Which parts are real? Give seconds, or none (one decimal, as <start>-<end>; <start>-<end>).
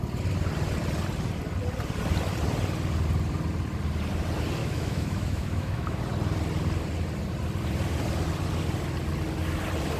0.0-4.6; 6.0-10.0